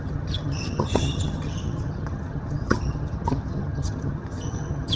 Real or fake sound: fake